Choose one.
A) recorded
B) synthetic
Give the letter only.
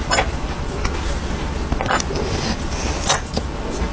A